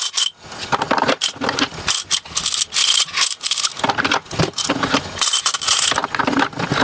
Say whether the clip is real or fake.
real